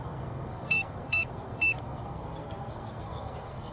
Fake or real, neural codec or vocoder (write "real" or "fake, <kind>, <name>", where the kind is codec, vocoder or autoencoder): fake, codec, SNAC